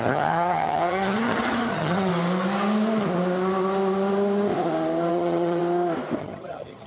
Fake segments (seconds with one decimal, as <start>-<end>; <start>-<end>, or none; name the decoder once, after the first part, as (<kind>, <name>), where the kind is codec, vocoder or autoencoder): 0.0-2.1 (vocoder, HiFi-GAN); 5.1-5.6; 6.2-6.9